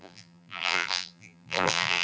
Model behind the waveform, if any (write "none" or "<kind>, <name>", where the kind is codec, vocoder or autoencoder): vocoder, BigVGAN v2